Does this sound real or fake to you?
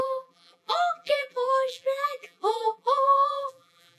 fake